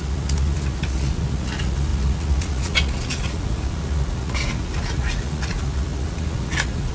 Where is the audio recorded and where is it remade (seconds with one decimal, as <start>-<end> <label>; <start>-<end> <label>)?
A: 0.0-6.9 remade